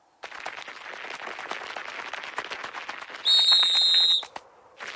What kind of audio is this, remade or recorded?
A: recorded